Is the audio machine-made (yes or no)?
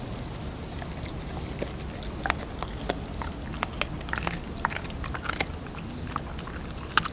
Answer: no